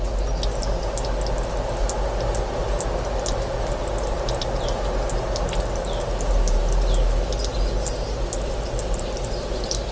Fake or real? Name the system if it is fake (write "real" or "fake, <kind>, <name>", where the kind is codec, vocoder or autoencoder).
real